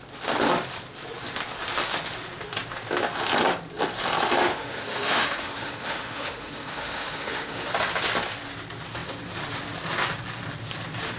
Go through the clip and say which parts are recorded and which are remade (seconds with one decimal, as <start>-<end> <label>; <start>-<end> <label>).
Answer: 0.0-4.5 recorded; 4.5-7.7 remade; 7.7-11.2 recorded